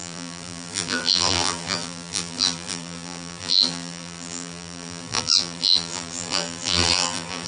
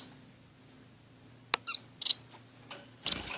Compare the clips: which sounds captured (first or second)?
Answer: second